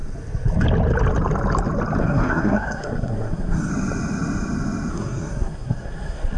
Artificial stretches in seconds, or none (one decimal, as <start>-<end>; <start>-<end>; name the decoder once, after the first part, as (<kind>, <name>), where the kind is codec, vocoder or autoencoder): 2.0-3.7 (codec, SNAC); 4.9-6.4